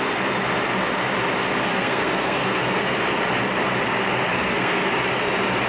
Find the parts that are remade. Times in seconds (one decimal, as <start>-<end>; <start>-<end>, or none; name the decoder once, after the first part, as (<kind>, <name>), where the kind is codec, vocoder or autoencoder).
1.7-2.6 (codec, SNAC); 4.3-4.9